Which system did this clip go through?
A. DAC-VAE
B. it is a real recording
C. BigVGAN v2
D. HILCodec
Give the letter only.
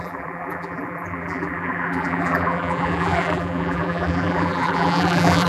C